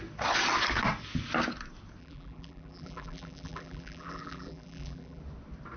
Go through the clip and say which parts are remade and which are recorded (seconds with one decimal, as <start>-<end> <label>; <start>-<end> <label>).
0.0-2.0 recorded; 2.0-5.2 remade; 5.2-5.8 recorded